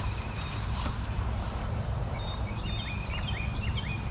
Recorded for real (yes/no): no